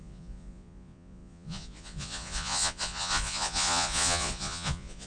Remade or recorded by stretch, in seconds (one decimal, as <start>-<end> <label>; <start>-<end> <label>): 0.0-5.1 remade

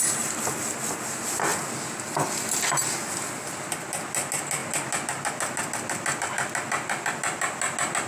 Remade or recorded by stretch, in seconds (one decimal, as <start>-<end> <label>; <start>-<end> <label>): 0.0-8.1 recorded

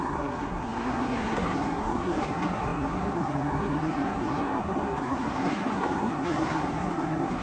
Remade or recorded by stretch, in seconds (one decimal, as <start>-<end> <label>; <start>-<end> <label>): 0.0-7.4 remade

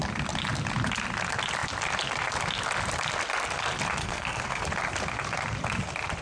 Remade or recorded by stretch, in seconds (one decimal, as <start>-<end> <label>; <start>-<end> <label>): 0.0-4.0 recorded; 4.0-4.6 remade; 4.6-6.2 recorded

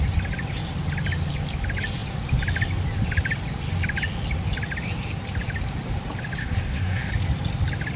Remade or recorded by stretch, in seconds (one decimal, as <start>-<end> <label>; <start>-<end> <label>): 0.0-6.4 recorded; 6.4-7.1 remade; 7.1-8.0 recorded